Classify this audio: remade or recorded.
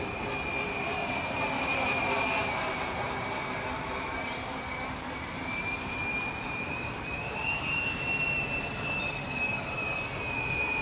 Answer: remade